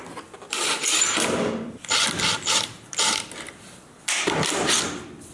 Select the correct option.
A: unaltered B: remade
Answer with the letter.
B